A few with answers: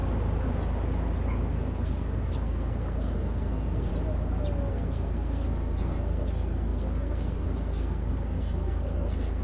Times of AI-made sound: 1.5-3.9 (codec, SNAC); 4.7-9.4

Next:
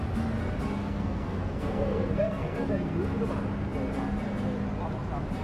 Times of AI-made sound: 0.8-3.2 (codec, SNAC)

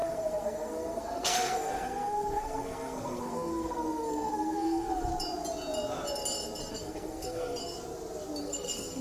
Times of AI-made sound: 0.0-5.1 (codec, SNAC); 6.7-7.6; 8.4-9.0

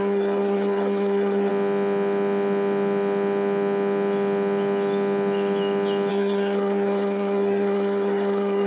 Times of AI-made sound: 0.0-1.5 (codec, SNAC); 6.1-8.7